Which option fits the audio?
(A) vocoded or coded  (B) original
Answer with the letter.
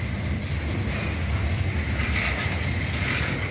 B